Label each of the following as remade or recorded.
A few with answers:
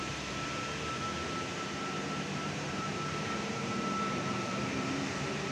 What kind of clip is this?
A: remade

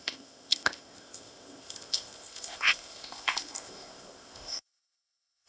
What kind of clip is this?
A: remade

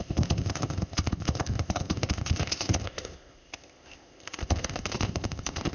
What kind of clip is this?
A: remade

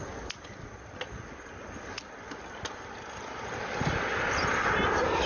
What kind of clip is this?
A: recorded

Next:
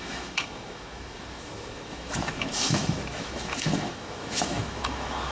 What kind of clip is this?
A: remade